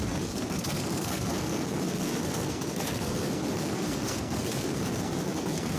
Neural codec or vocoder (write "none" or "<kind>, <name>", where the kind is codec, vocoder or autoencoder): codec, SNAC